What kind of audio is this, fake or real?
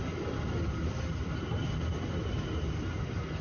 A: fake